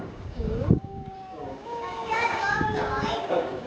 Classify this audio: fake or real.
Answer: fake